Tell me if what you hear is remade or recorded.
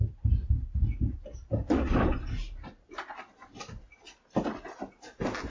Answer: recorded